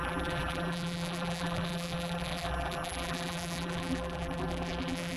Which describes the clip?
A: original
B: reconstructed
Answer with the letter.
B